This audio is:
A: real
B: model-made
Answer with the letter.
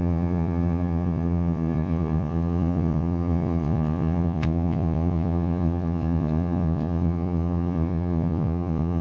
B